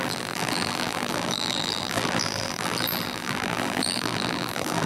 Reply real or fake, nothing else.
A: fake